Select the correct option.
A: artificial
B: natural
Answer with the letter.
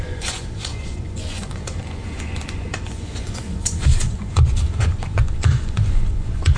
A